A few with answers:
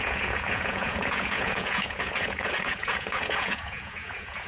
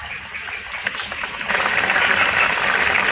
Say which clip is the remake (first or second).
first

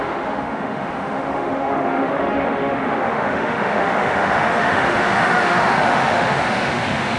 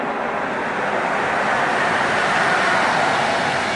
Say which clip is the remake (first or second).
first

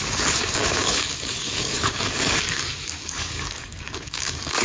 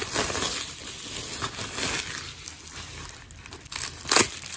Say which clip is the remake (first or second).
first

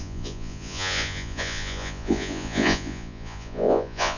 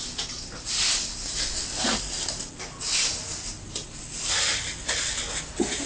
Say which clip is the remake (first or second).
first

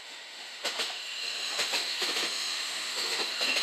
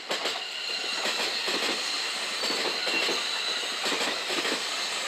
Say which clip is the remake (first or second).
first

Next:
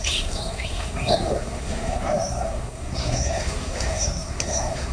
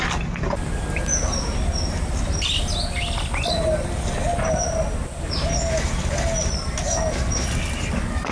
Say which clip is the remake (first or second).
first